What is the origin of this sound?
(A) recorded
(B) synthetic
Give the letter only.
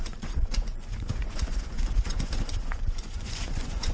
B